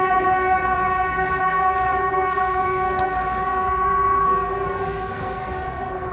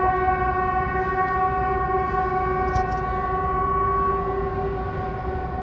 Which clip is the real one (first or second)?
second